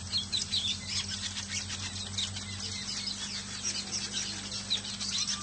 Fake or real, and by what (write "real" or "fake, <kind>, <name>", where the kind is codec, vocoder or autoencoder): real